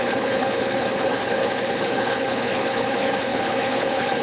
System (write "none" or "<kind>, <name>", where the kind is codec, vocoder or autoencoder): codec, HILCodec